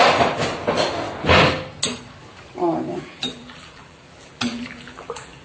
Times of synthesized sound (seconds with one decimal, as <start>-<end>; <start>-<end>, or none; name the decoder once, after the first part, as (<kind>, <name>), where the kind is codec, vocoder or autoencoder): 2.9-5.4 (vocoder, BigVGAN v2)